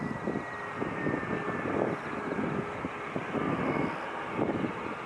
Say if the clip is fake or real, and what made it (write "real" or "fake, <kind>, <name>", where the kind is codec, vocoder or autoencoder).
real